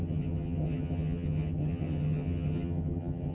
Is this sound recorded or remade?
remade